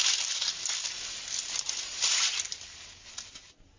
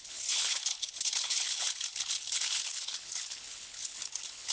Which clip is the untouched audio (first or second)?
first